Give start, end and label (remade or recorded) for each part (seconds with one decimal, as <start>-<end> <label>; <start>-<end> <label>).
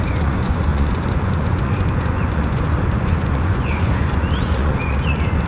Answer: 0.0-5.5 remade